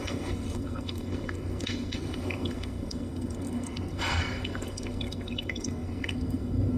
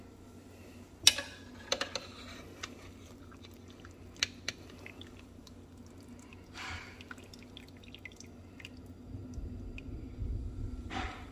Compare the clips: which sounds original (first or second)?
second